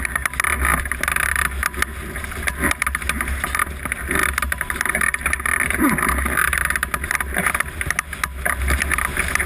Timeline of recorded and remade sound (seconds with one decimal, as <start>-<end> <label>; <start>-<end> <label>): 0.0-9.5 recorded